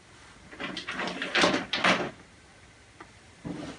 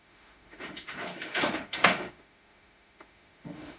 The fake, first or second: second